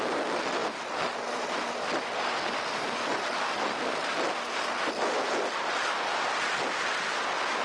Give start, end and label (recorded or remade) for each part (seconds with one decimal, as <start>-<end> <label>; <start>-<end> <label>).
0.0-7.6 recorded